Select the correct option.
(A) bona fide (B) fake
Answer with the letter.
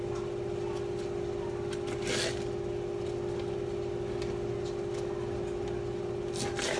A